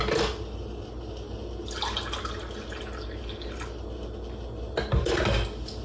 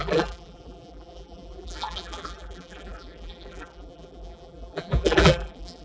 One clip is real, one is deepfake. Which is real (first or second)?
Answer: first